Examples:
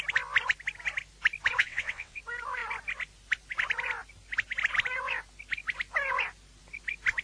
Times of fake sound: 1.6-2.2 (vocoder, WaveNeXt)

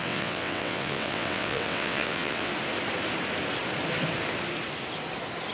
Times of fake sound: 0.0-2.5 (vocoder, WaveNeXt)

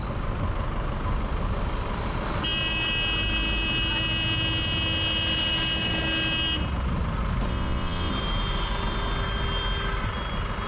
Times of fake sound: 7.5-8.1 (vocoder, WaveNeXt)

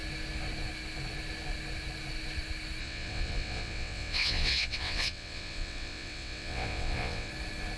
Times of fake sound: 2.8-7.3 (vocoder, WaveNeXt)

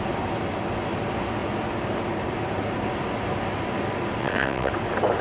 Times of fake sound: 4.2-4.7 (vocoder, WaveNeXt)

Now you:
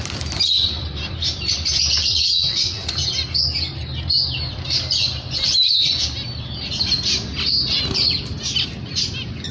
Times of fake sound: 2.0-2.9 (vocoder, WaveNeXt)

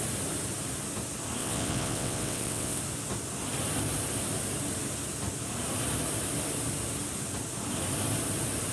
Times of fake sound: 1.4-2.8 (vocoder, WaveNeXt)

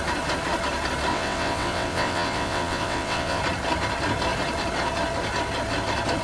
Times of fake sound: 1.1-3.4 (vocoder, WaveNeXt)